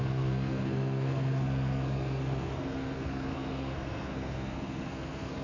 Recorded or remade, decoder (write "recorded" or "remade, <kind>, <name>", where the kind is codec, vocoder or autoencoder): remade, codec, SNAC